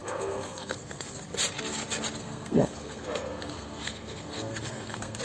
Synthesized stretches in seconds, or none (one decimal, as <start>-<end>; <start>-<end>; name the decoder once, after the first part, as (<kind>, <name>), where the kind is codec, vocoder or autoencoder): 0.0-1.1 (codec, SNAC); 2.2-5.2